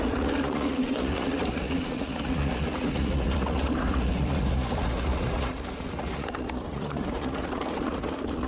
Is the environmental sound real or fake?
fake